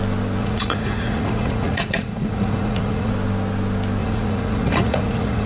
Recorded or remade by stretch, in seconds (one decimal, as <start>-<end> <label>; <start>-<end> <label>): 0.0-0.4 recorded; 0.4-3.1 remade; 3.1-4.0 recorded; 4.0-5.5 remade